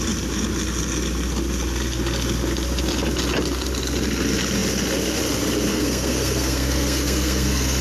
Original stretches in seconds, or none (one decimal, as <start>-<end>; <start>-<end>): 0.0-5.7